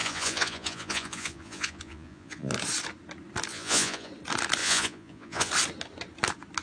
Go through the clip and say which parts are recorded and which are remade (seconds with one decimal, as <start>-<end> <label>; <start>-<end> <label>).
0.0-2.5 remade; 2.5-3.5 recorded; 3.5-4.1 remade; 4.1-4.6 recorded; 4.6-5.5 remade; 5.5-6.6 recorded